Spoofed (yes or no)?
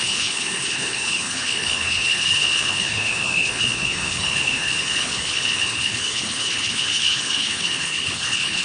yes